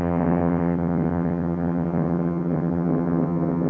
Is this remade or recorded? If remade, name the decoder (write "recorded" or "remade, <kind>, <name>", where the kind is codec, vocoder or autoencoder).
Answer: remade, vocoder, HiFi-GAN